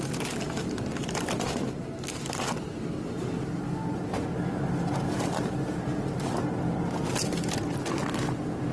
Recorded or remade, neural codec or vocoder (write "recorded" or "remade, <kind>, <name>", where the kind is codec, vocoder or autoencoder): recorded